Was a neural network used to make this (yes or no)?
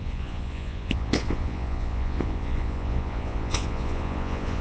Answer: yes